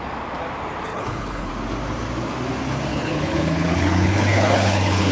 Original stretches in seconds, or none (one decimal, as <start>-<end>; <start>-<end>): 0.0-0.9; 1.5-2.9